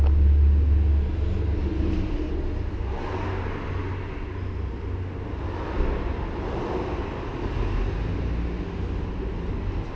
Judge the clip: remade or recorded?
recorded